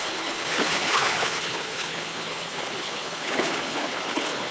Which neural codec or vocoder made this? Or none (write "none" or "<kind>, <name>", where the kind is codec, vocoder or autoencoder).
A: codec, HILCodec